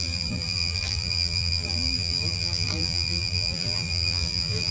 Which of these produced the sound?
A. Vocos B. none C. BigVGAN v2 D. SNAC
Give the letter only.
C